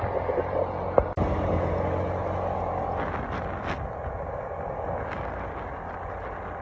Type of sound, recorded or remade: recorded